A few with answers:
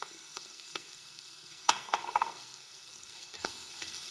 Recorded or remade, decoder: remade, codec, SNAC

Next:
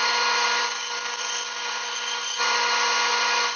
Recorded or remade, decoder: recorded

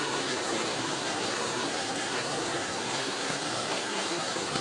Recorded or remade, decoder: remade, codec, SNAC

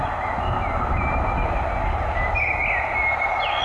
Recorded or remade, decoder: recorded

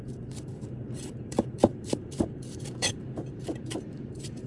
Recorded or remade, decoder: remade, vocoder, BigVGAN v2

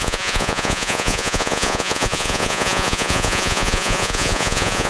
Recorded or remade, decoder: remade, vocoder, Vocos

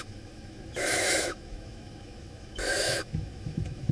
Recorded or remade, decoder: remade, autoencoder, DAC-VAE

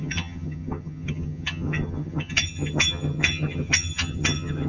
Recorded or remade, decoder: remade, vocoder, HiFi-GAN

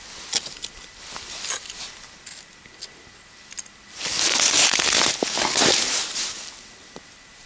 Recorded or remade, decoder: recorded